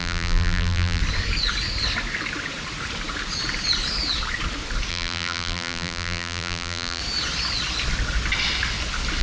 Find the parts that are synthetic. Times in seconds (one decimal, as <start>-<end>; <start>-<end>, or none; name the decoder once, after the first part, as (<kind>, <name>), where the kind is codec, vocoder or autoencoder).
0.0-1.0 (vocoder, BigVGAN v2); 4.9-7.0